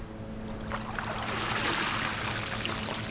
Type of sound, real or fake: real